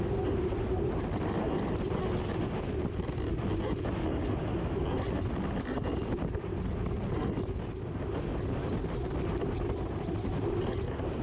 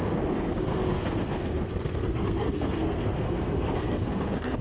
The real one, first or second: first